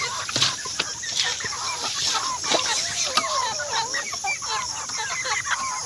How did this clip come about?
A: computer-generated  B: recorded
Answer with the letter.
B